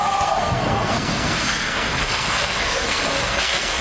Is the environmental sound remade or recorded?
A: remade